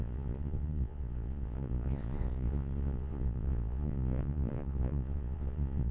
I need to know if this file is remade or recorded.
remade